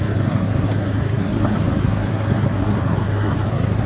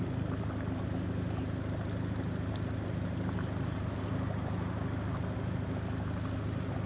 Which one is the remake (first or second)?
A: first